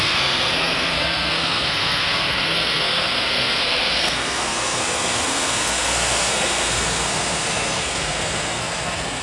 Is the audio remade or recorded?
remade